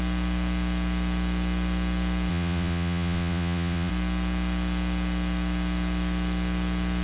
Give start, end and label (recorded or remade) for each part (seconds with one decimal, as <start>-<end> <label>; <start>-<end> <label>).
0.0-2.3 recorded; 2.3-3.9 remade; 3.9-7.0 recorded